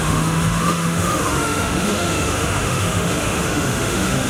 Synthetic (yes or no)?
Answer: yes